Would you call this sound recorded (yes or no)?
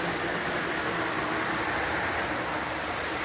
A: yes